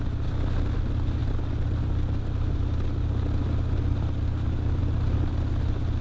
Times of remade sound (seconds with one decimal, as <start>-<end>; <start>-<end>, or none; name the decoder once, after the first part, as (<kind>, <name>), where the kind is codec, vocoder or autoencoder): none

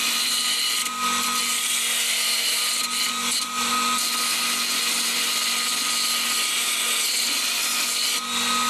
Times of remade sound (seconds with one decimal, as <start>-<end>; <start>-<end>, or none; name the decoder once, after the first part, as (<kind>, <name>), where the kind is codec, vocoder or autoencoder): none

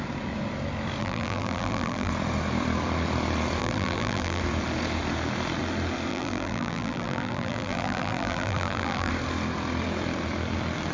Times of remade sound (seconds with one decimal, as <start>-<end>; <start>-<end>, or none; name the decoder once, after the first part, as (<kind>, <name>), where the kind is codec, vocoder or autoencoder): 1.0-2.1 (vocoder, BigVGAN v2); 3.6-4.4; 6.1-9.1

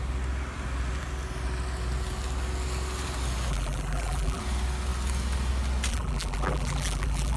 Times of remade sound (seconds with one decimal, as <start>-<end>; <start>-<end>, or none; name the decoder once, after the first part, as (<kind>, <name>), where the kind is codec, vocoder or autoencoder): 3.5-4.4 (vocoder, BigVGAN v2); 5.9-7.4

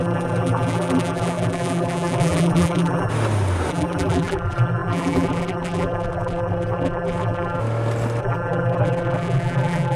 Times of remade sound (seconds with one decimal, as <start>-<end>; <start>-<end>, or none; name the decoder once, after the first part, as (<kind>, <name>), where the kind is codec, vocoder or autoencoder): 0.0-3.1 (vocoder, BigVGAN v2); 3.7-7.6; 8.2-10.0

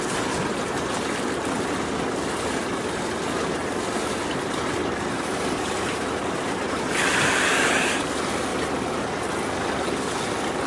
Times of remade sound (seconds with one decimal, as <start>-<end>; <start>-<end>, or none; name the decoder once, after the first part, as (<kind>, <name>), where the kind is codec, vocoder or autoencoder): 3.6-7.2 (vocoder, BigVGAN v2)